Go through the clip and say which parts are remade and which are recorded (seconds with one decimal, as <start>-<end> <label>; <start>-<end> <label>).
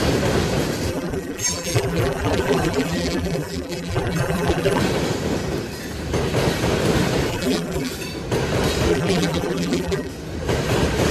0.0-0.9 recorded; 0.9-4.8 remade; 4.8-7.3 recorded; 7.3-7.9 remade; 7.9-8.9 recorded; 8.9-10.1 remade; 10.1-11.1 recorded